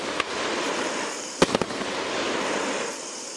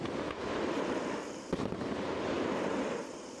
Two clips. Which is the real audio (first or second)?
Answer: first